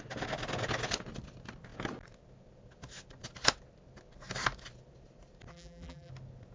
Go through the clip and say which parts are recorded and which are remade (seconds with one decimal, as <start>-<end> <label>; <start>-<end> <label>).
0.0-5.5 recorded; 5.5-6.1 remade; 6.1-6.5 recorded